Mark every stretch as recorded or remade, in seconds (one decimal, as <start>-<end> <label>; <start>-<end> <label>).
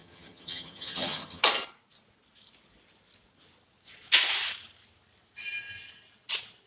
0.0-1.4 remade; 1.4-6.7 recorded